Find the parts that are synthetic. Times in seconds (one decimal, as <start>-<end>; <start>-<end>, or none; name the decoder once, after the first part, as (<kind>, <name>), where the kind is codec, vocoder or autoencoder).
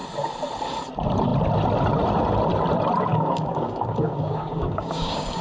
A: 3.1-5.4 (codec, DAC)